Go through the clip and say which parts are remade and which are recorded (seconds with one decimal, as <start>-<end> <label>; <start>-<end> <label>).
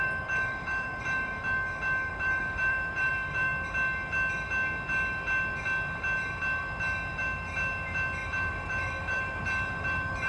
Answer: 0.0-1.4 remade; 1.4-2.1 recorded; 2.1-3.5 remade; 3.5-8.5 recorded; 8.5-10.3 remade